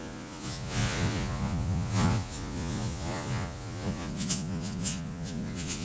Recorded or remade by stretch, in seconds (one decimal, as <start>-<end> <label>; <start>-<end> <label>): 0.0-5.8 remade